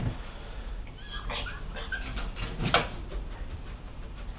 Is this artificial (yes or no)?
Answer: no